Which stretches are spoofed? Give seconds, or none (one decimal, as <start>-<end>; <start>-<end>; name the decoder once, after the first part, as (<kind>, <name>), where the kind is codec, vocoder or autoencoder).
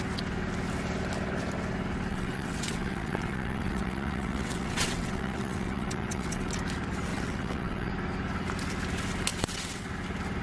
2.1-6.5 (vocoder, WaveNeXt); 7.1-7.9; 9.3-9.9